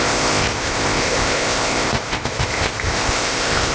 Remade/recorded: remade